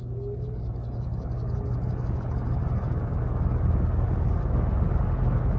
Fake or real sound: fake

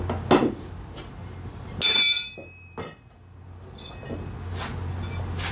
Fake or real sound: real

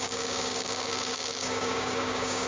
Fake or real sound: fake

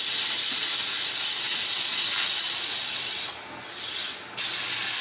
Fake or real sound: real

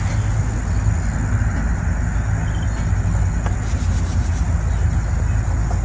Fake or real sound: real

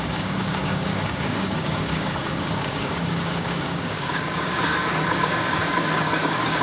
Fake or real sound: fake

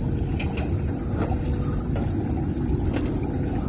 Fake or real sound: real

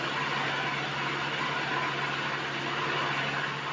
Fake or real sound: real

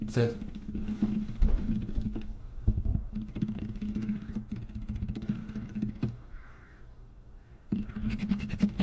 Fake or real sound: fake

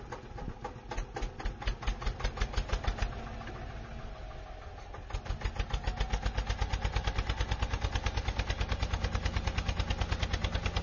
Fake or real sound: real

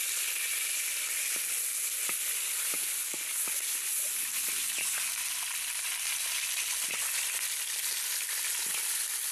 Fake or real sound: real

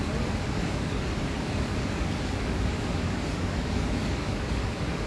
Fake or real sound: fake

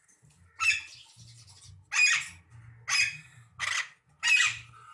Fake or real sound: real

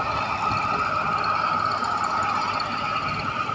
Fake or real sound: real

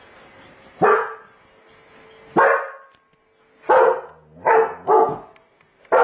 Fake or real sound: real